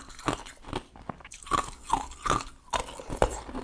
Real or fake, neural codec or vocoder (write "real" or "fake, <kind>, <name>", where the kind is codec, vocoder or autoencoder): real